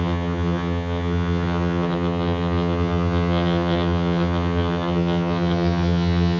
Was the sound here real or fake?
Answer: fake